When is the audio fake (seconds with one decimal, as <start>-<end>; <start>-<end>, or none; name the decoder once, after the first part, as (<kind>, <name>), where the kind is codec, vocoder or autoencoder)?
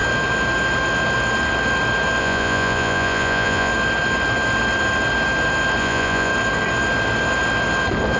2.2-3.7 (vocoder, Vocos); 5.8-6.3